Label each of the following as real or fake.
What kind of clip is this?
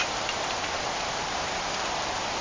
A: fake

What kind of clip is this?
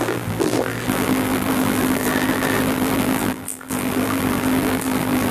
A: fake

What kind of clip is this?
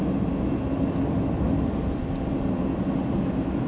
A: real